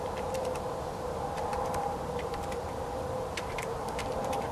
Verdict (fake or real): fake